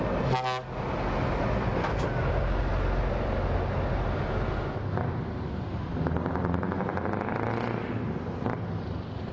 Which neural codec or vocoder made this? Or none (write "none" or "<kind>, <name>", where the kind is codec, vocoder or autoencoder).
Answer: none